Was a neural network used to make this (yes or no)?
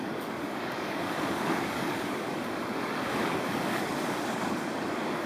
yes